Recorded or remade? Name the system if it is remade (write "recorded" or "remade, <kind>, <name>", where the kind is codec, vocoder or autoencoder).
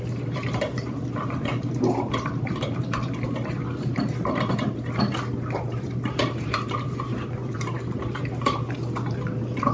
remade, vocoder, BigVGAN v2